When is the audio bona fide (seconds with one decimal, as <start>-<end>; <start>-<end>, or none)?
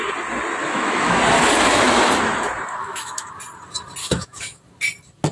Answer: 0.0-0.6; 1.2-2.8; 3.3-4.0; 4.6-5.3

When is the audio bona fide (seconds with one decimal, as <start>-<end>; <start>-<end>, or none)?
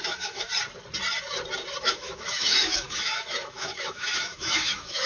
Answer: 0.5-1.8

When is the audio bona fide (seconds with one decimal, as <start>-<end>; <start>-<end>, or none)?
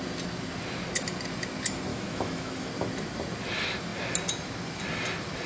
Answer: 0.0-1.9; 2.7-5.5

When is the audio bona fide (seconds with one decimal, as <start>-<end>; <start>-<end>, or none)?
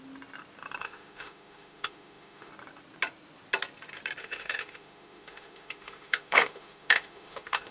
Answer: 0.0-0.8; 2.5-4.2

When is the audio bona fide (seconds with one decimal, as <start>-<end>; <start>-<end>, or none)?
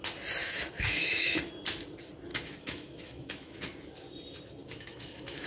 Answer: 0.0-0.4; 1.3-2.3; 3.6-4.6